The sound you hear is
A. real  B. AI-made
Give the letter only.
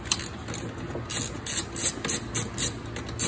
A